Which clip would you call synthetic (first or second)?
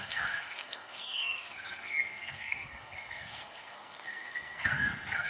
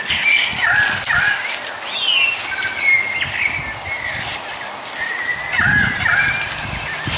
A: first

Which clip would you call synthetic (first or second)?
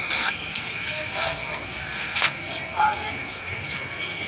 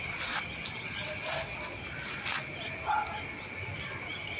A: first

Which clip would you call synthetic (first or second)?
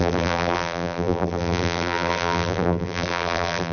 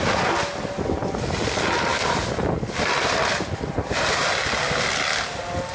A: first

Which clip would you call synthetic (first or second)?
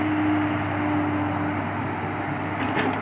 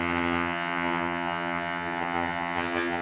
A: second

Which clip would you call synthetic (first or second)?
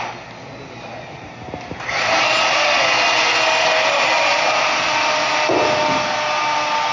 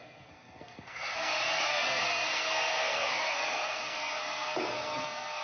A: second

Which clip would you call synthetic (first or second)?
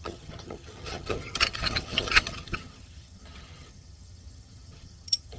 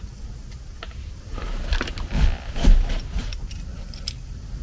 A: first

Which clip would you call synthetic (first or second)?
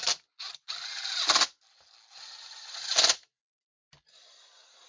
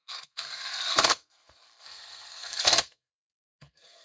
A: second